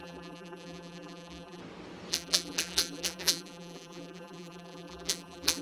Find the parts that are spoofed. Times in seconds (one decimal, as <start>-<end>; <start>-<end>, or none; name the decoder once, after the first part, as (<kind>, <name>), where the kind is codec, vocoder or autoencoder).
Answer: 0.0-1.6 (vocoder, BigVGAN v2); 2.1-5.6